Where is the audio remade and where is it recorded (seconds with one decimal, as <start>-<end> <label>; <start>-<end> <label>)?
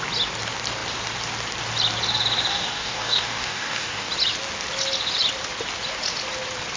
0.0-2.5 recorded; 2.5-4.1 remade; 4.1-6.8 recorded